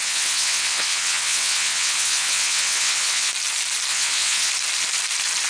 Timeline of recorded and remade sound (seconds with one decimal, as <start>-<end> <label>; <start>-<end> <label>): 0.0-3.3 remade; 3.3-3.9 recorded; 3.9-4.5 remade; 4.5-5.5 recorded